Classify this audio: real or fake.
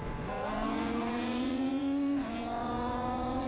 fake